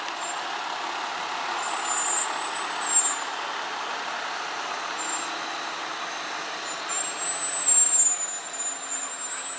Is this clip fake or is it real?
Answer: real